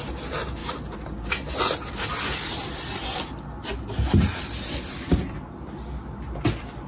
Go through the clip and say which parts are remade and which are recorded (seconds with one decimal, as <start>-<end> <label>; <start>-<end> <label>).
0.0-6.9 recorded